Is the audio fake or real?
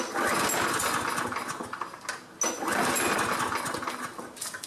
real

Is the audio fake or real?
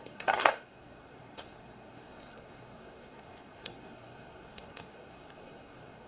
fake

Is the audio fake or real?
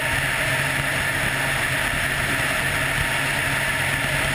real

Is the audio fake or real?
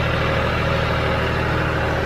real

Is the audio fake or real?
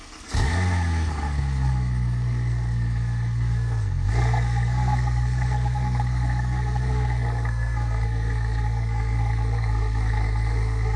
fake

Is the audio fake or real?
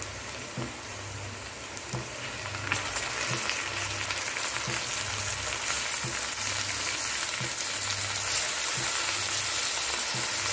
real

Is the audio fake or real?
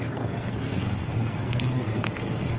fake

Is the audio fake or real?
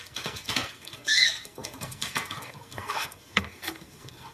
fake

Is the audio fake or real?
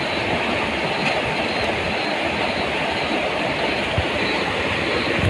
real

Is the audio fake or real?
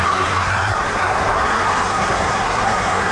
fake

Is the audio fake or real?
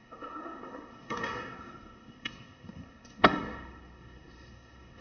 fake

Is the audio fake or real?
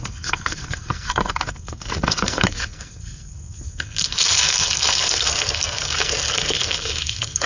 fake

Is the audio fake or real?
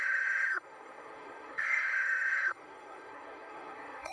fake